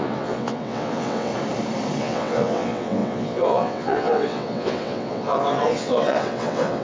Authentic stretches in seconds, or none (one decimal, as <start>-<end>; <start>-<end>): 1.3-2.0